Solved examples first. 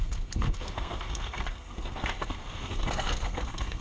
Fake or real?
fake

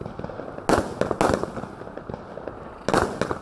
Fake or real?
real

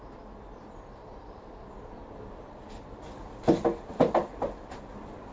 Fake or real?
real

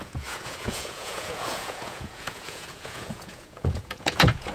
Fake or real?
fake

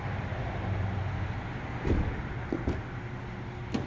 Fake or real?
real